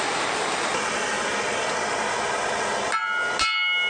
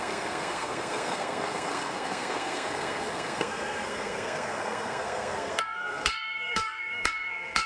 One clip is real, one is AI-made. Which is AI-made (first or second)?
second